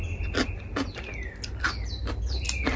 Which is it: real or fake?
real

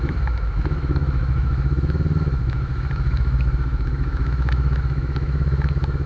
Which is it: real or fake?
fake